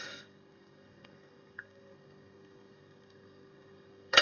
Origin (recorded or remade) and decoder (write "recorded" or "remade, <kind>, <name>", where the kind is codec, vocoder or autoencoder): remade, codec, SNAC